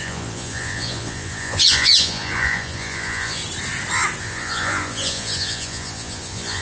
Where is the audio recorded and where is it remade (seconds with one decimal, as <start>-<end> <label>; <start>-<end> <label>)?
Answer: 0.0-3.4 remade; 3.4-4.2 recorded; 4.2-6.6 remade